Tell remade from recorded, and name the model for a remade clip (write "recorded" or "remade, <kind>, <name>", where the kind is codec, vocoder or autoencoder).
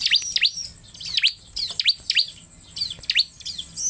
recorded